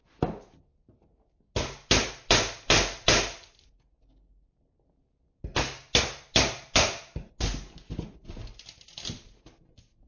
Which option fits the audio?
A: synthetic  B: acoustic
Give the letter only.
B